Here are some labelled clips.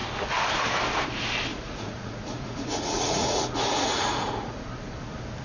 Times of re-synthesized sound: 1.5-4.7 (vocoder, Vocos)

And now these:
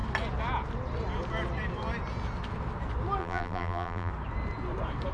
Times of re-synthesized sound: 3.2-4.1 (vocoder, BigVGAN v2)

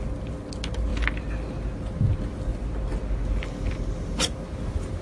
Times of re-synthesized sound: none